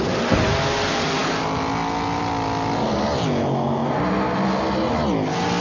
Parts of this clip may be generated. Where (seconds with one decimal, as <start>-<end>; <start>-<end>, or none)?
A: none

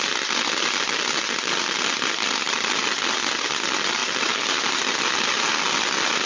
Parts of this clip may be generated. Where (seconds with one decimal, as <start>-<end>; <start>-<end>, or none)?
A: none

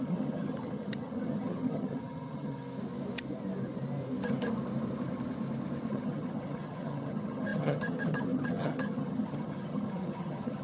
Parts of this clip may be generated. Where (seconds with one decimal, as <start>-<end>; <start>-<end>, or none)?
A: 0.0-2.6; 5.9-10.6